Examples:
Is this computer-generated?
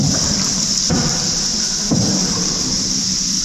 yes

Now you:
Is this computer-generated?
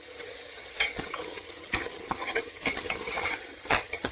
yes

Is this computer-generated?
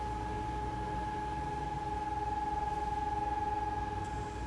no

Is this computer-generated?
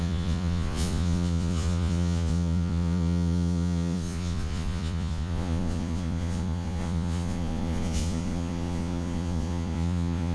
yes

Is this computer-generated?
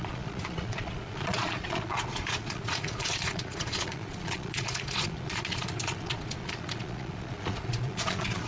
yes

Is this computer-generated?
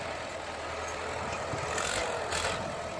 no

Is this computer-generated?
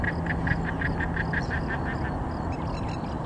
no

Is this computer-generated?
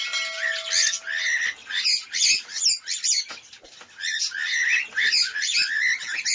no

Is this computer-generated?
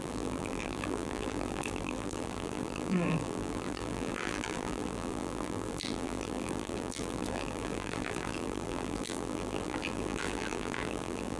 yes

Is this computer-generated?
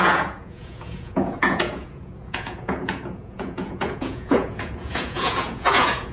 yes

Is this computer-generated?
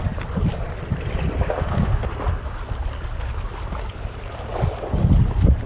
no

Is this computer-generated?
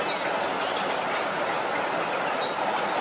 no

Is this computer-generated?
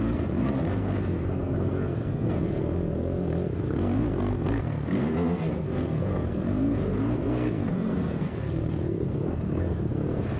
yes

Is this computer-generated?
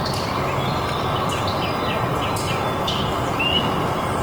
no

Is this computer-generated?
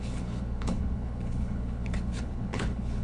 yes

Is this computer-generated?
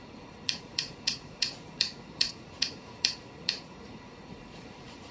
yes